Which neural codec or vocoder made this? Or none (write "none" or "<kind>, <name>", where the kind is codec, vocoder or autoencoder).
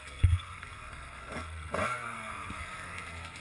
codec, SNAC